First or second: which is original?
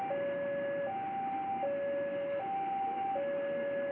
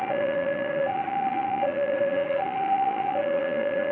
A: first